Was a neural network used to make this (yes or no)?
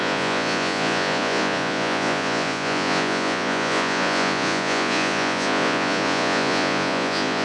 yes